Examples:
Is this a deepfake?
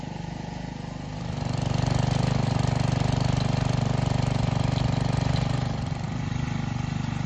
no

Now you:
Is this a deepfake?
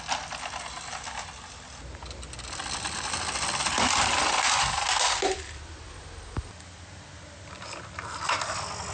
no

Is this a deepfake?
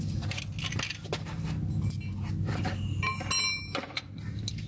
no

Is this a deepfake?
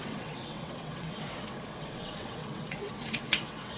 yes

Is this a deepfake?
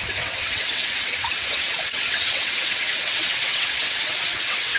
yes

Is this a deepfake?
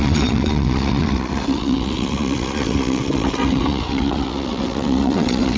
yes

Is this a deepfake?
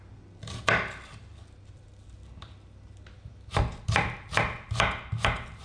no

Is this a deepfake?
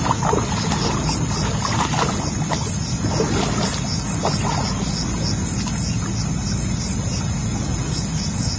no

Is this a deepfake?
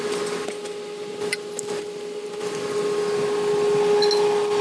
no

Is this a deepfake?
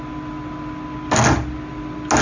no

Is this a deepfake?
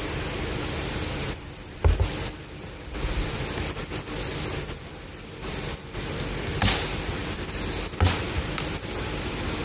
no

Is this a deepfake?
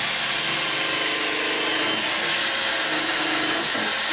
no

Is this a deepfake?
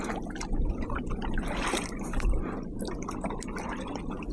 no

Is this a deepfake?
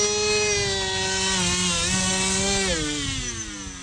no